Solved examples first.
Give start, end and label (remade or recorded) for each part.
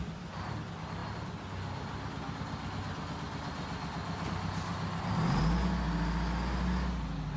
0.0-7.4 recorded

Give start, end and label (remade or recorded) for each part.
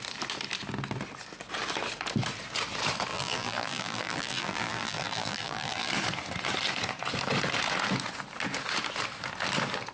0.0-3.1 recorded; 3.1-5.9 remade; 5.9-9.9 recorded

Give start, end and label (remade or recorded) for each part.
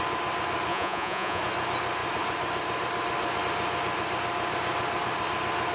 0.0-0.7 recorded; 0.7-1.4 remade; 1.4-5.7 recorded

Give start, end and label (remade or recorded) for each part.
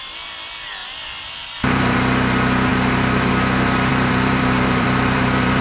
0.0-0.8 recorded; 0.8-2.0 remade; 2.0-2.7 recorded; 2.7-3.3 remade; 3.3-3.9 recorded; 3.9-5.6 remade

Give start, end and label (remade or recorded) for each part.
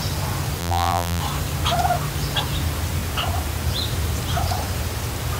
0.0-0.6 recorded; 0.6-1.2 remade; 1.2-5.4 recorded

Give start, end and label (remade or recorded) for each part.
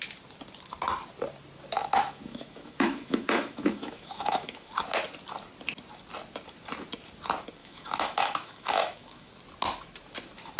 0.0-1.8 recorded; 1.8-4.7 remade; 4.7-7.6 recorded; 7.6-9.3 remade; 9.3-10.6 recorded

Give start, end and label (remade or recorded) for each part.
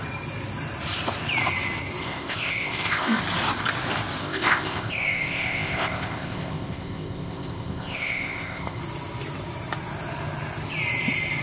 0.0-2.0 recorded; 2.0-3.2 remade; 3.2-4.2 recorded; 4.2-8.8 remade; 8.8-11.4 recorded